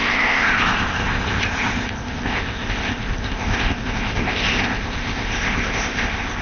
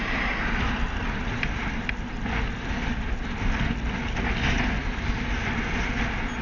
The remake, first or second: first